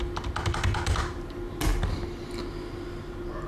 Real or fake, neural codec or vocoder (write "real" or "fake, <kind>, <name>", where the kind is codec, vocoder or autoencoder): real